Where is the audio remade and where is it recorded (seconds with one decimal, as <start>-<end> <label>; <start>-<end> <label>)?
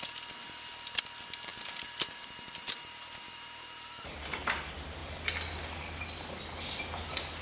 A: 0.0-1.5 recorded; 1.5-4.5 remade; 4.5-7.4 recorded